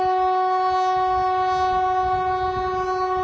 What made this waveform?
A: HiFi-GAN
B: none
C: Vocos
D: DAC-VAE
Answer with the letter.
B